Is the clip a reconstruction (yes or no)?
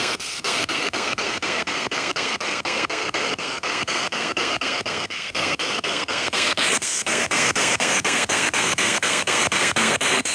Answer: yes